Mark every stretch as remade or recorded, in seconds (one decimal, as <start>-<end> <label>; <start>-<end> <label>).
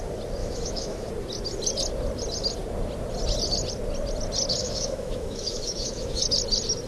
0.0-0.4 recorded; 0.4-1.1 remade; 1.1-4.6 recorded; 4.6-6.2 remade; 6.2-6.9 recorded